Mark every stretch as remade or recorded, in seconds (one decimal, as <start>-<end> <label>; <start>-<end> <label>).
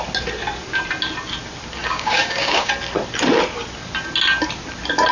0.0-1.8 recorded; 1.8-2.7 remade; 2.7-5.1 recorded